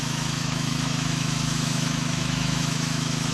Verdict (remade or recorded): remade